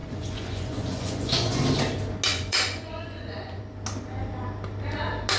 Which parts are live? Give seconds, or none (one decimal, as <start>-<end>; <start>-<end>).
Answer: 1.6-2.3; 3.6-5.4